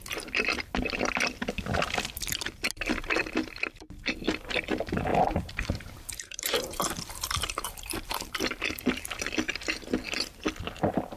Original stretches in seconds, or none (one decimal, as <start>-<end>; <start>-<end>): 0.0-5.1; 8.8-11.2